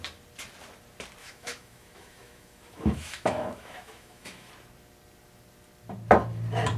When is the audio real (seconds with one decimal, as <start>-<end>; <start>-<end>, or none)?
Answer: 0.0-1.2; 4.5-6.8